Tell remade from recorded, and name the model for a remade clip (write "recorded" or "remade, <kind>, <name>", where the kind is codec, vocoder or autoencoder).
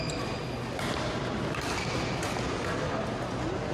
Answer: recorded